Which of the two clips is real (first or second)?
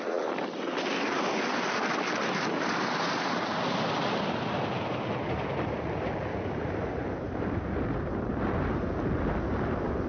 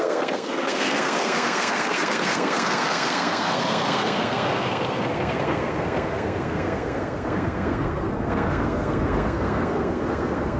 first